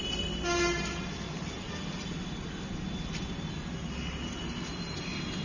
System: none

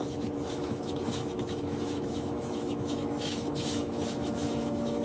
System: autoencoder, DAC-VAE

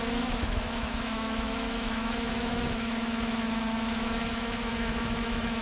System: autoencoder, DAC-VAE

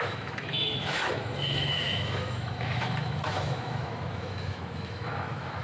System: autoencoder, DAC-VAE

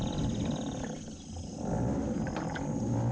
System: none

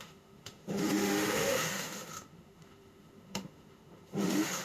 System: autoencoder, DAC-VAE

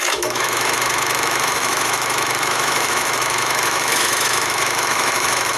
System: autoencoder, DAC-VAE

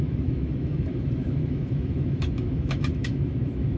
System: autoencoder, DAC-VAE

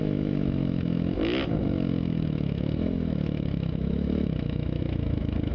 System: autoencoder, DAC-VAE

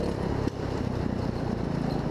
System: none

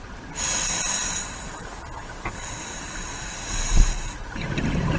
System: none